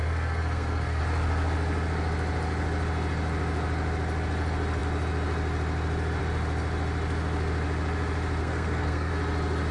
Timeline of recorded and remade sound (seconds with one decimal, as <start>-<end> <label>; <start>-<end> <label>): 0.0-1.0 remade; 1.0-8.4 recorded; 8.4-9.1 remade; 9.1-9.7 recorded